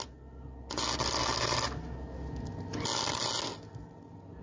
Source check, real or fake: real